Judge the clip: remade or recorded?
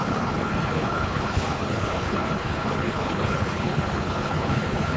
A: remade